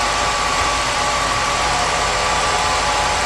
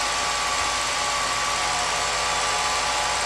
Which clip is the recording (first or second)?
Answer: second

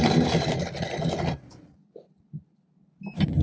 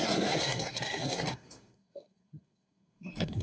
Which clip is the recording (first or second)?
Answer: first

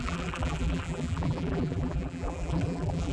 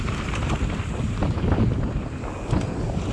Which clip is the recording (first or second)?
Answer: second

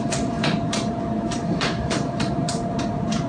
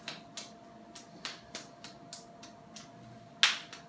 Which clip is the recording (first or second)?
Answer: second